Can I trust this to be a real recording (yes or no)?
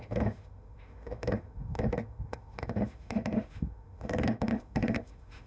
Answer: no